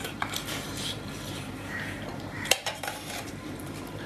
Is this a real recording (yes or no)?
no